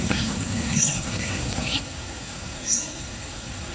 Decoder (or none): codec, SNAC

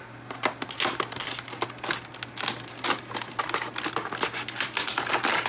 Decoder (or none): none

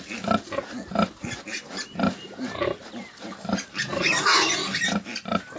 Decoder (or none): none